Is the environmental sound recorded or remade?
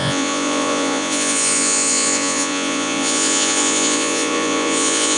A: remade